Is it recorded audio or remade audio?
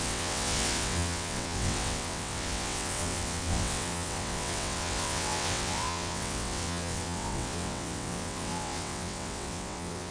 remade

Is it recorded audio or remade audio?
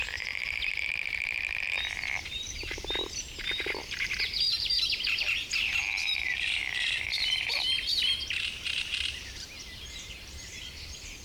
remade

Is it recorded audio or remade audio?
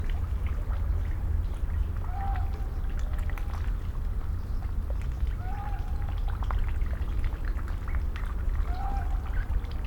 recorded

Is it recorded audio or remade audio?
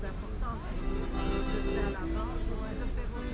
recorded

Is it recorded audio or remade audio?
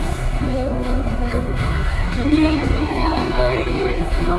remade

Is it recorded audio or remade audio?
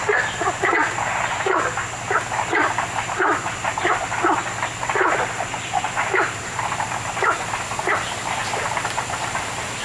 recorded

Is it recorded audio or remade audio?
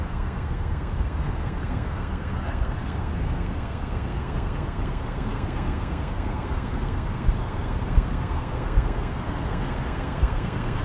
remade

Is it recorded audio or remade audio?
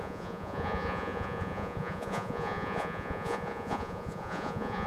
remade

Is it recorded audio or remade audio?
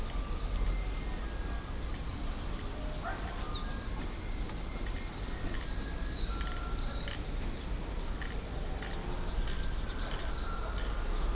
recorded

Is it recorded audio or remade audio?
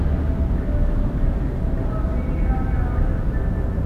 recorded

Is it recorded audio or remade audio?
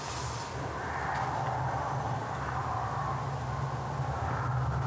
recorded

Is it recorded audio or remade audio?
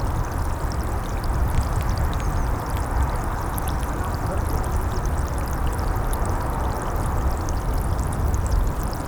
recorded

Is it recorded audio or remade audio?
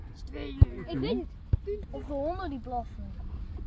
recorded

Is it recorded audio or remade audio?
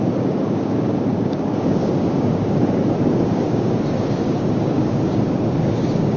remade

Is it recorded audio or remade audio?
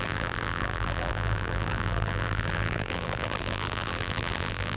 remade